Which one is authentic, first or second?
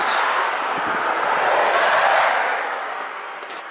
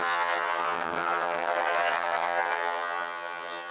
first